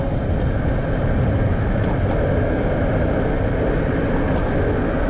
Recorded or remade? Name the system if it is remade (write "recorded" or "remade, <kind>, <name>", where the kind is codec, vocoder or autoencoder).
recorded